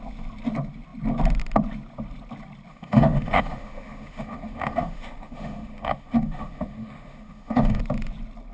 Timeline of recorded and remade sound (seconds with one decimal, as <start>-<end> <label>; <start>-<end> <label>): 0.0-2.7 recorded; 2.7-7.8 remade; 7.8-8.5 recorded